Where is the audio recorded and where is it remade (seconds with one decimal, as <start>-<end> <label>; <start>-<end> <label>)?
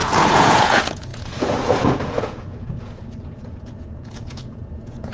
0.0-5.1 remade